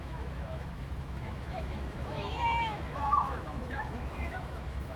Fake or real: fake